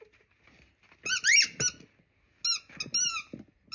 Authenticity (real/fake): real